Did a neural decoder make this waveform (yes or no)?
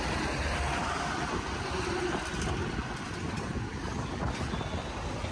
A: no